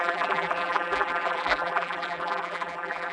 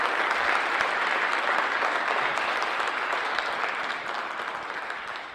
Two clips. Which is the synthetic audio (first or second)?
first